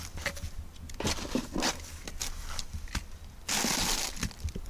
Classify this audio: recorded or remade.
recorded